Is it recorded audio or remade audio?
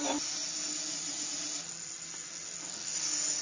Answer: recorded